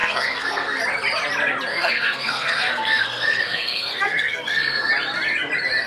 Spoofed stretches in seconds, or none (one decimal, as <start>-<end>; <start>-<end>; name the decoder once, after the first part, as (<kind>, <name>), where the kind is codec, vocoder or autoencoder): 0.0-0.8 (codec, SNAC); 1.7-4.9